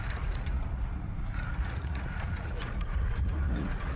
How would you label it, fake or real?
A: fake